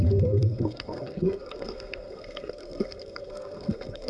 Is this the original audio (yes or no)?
no